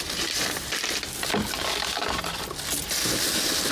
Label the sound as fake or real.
real